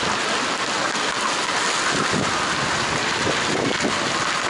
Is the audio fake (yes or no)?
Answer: no